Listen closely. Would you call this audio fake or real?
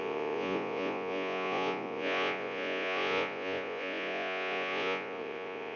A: fake